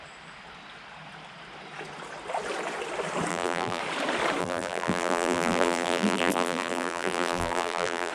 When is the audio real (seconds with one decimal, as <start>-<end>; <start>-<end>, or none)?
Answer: 0.0-3.3; 3.8-4.4